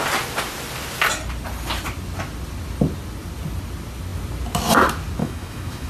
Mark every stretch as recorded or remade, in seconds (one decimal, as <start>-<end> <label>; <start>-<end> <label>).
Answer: 0.0-5.2 recorded; 5.2-5.9 remade